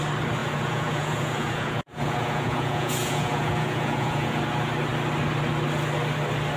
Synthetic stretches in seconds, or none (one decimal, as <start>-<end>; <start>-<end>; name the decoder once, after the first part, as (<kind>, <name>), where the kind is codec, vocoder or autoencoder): 0.4-4.4 (vocoder, Vocos)

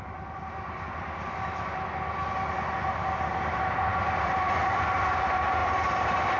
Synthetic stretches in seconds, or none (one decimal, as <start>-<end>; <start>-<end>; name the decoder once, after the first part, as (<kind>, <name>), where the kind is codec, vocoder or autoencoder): 0.0-2.2 (vocoder, BigVGAN v2); 3.2-6.4

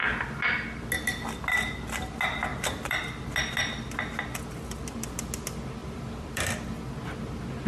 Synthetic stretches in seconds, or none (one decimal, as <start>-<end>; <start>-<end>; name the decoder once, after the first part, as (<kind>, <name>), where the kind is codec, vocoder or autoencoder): 2.5-3.0 (vocoder, BigVGAN v2); 5.8-6.5

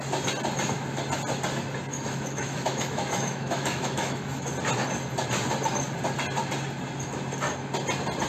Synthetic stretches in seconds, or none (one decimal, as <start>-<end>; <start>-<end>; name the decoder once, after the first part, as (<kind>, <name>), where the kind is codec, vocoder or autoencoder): 1.9-4.5 (autoencoder, DAC-VAE)